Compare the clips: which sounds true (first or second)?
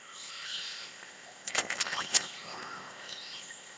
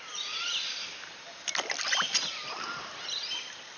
second